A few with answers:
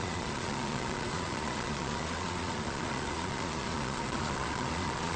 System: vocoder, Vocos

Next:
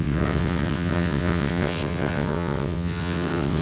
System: vocoder, WaveNeXt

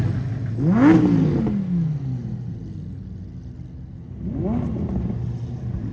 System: none